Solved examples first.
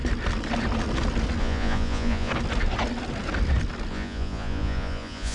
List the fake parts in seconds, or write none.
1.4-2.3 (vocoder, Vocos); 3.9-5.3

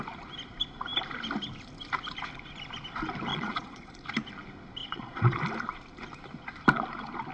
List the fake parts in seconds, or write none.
3.3-3.9 (vocoder, Vocos); 4.8-5.4

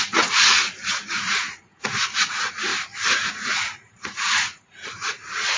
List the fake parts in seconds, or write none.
0.0-2.7 (vocoder, Vocos); 3.3-5.6

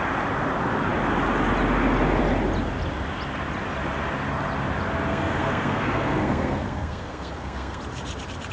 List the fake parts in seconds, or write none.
5.1-7.8 (codec, SNAC)